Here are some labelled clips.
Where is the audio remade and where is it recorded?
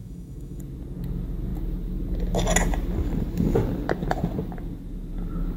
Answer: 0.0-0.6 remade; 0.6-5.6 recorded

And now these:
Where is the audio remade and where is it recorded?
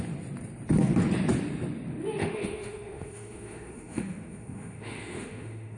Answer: 0.0-2.2 recorded; 2.2-5.8 remade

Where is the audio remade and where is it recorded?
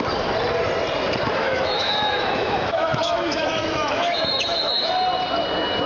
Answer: 0.0-1.4 recorded; 1.4-4.9 remade; 4.9-5.9 recorded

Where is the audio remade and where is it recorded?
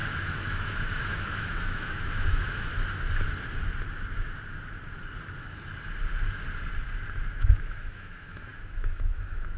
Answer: 0.0-2.7 remade; 2.7-7.3 recorded; 7.3-9.6 remade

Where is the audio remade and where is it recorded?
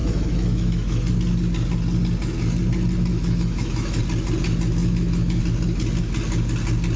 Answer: 0.0-1.1 remade; 1.1-3.1 recorded; 3.1-4.0 remade; 4.0-4.8 recorded; 4.8-5.4 remade; 5.4-7.0 recorded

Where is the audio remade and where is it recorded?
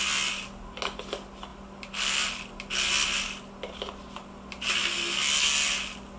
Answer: 0.0-6.2 recorded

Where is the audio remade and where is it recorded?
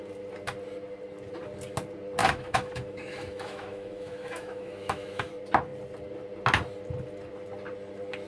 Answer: 0.0-2.2 recorded; 2.2-5.3 remade; 5.3-8.3 recorded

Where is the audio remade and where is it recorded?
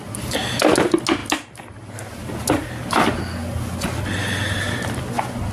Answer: 0.0-5.5 recorded